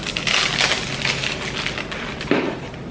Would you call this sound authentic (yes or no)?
yes